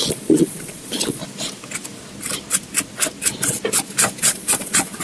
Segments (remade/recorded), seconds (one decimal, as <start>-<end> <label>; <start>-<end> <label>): 0.0-1.2 remade; 1.2-4.2 recorded; 4.2-5.0 remade